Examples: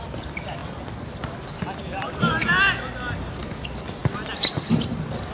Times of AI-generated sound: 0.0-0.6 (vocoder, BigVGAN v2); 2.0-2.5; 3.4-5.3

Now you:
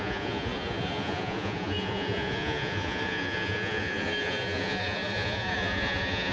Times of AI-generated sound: 0.0-6.3 (vocoder, Vocos)

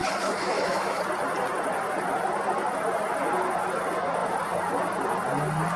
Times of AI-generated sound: 0.0-1.0 (autoencoder, DAC-VAE)

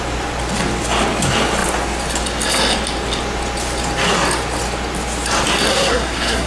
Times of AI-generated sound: 5.7-6.5 (codec, SNAC)

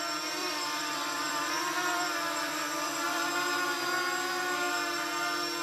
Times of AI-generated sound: 0.4-3.3 (vocoder, BigVGAN v2)

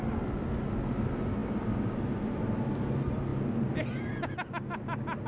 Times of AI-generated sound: none